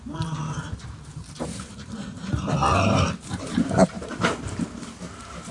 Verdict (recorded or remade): remade